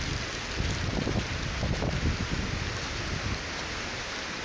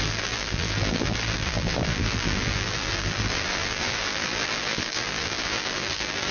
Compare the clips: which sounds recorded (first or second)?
first